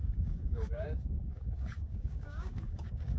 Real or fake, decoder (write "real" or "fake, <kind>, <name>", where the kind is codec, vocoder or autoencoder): fake, codec, DAC